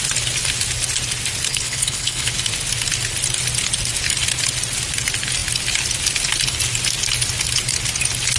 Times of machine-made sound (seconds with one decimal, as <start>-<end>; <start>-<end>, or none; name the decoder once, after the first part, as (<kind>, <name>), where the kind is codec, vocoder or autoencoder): 1.5-2.3 (codec, HILCodec)